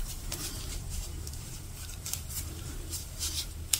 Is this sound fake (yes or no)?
yes